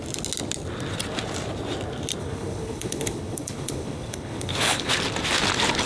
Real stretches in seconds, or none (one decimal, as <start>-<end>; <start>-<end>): 0.0-2.2; 4.9-5.9

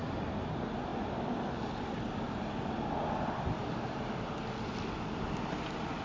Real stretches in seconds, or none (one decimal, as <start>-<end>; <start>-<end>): 0.0-6.0

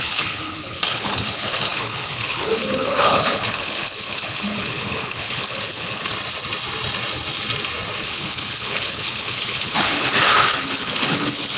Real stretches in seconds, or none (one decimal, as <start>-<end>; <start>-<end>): 6.1-8.0

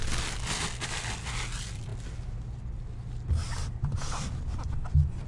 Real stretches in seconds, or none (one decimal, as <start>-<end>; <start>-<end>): 0.0-5.3

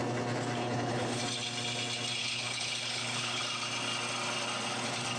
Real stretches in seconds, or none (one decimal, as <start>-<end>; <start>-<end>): 0.0-0.6; 1.2-2.2; 3.4-5.2

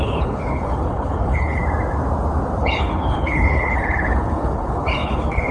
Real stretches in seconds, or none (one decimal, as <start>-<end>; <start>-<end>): 1.6-2.6

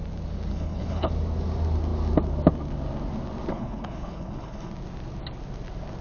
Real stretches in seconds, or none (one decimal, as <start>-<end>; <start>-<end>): 0.0-0.5; 1.1-3.5; 4.7-6.0

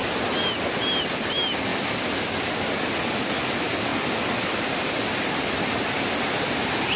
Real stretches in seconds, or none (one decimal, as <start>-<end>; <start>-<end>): 0.0-7.0